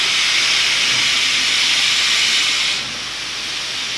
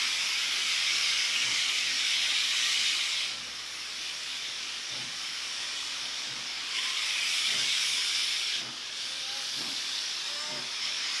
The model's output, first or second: second